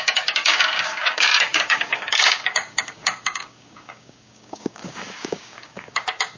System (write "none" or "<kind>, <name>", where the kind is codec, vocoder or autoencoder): codec, DAC